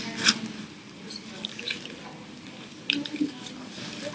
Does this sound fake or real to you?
real